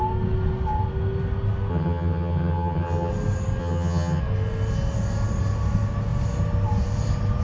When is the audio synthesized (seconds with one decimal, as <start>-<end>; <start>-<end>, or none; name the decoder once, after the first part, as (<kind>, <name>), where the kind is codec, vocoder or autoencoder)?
1.7-3.1 (vocoder, HiFi-GAN); 3.6-4.2